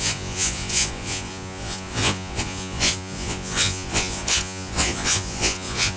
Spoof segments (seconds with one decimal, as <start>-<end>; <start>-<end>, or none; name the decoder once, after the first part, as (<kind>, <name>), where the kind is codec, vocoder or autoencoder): 0.0-6.0 (vocoder, Vocos)

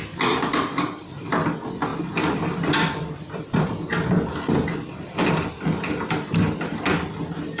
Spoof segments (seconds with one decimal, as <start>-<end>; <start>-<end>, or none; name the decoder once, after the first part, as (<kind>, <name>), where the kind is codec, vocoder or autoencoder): 0.0-1.3 (vocoder, BigVGAN v2); 1.9-3.7

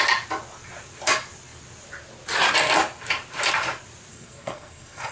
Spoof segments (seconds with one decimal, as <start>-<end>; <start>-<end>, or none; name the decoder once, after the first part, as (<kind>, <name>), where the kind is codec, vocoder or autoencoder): 4.1-5.1 (codec, SNAC)

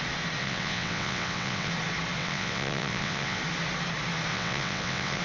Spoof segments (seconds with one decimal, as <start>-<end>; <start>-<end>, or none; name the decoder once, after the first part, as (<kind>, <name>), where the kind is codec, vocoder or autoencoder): 0.4-1.7 (vocoder, WaveNeXt); 2.2-3.4; 4.3-5.2

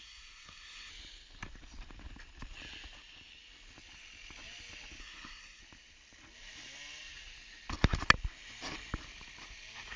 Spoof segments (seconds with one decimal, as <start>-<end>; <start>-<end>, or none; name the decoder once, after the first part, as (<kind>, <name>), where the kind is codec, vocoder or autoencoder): 0.0-0.9 (codec, SNAC); 5.0-5.6

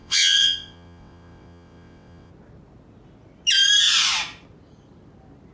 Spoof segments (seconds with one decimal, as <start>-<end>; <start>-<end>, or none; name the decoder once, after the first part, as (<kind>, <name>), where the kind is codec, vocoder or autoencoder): 0.0-2.3 (vocoder, WaveNeXt)

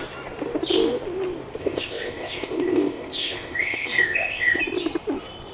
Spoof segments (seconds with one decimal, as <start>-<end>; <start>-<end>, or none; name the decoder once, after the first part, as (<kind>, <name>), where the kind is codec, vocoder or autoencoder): 1.6-4.6 (codec, ZipCodec)

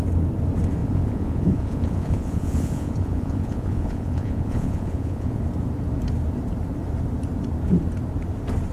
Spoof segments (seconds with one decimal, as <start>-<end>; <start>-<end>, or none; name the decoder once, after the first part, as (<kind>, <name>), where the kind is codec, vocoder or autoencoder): 0.8-5.4 (vocoder, Vocos)